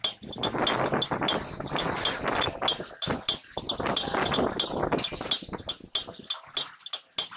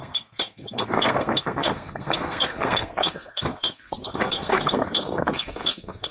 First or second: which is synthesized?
second